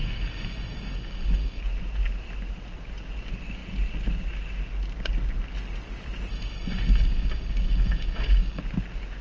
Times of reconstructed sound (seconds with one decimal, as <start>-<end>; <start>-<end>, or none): 0.0-1.6; 6.3-8.6